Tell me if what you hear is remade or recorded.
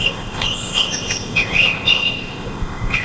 remade